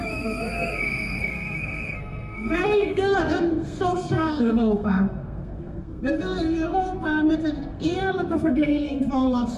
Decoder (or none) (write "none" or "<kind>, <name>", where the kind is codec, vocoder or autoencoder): codec, SNAC